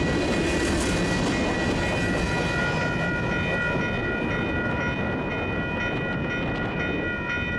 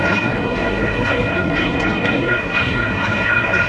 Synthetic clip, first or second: second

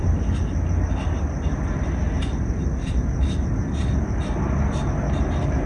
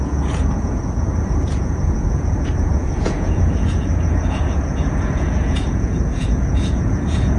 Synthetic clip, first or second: second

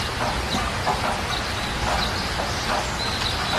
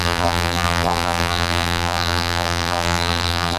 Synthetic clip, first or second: second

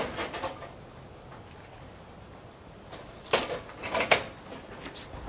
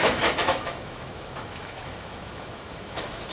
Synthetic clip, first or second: second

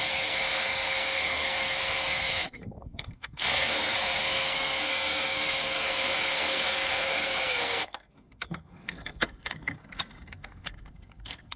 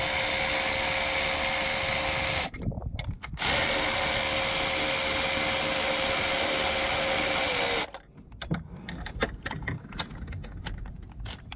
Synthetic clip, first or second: first